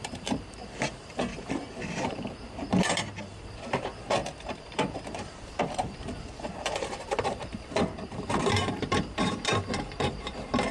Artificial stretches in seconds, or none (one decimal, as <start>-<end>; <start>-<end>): 0.0-10.7